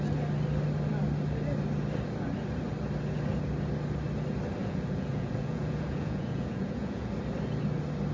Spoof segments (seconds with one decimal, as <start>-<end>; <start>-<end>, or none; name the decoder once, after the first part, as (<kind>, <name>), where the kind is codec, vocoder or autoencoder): 4.6-7.1 (vocoder, Vocos)